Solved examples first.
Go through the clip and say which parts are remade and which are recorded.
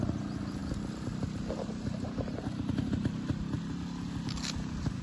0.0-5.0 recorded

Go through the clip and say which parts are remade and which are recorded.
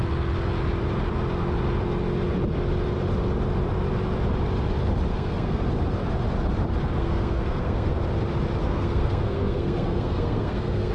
0.0-5.1 recorded; 5.1-5.7 remade; 5.7-7.0 recorded; 7.0-7.9 remade; 7.9-8.6 recorded; 8.6-10.9 remade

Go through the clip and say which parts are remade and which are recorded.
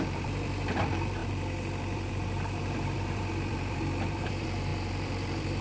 0.0-5.6 remade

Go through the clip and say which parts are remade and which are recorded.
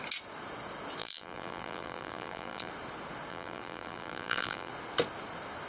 0.0-1.0 recorded; 1.0-2.7 remade; 2.7-3.3 recorded; 3.3-4.7 remade; 4.7-5.7 recorded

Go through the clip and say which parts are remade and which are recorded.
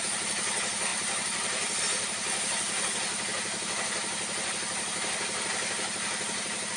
0.0-6.8 recorded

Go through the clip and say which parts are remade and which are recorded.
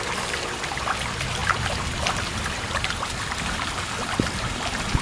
0.0-5.0 recorded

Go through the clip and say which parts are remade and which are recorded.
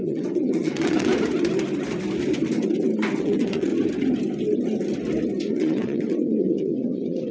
0.0-1.1 remade; 1.1-3.2 recorded; 3.2-3.7 remade; 3.7-5.5 recorded; 5.5-7.3 remade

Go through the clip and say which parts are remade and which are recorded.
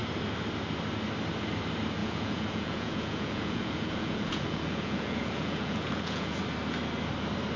0.0-2.0 recorded; 2.0-6.4 remade; 6.4-7.6 recorded